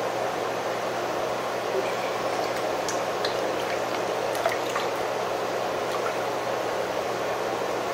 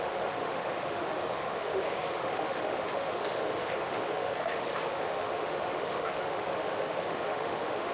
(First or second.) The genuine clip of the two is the first